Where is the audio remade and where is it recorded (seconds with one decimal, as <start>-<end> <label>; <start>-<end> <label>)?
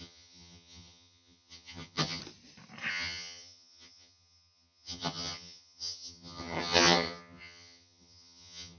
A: 0.0-2.2 remade; 2.2-2.9 recorded; 2.9-8.8 remade